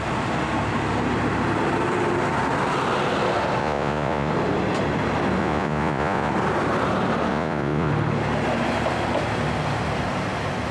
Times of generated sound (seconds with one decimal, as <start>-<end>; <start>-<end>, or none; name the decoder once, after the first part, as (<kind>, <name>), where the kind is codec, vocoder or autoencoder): 3.6-4.3 (vocoder, Vocos); 5.4-6.3; 7.3-7.9